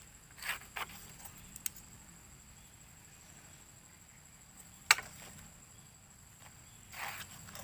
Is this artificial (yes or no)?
no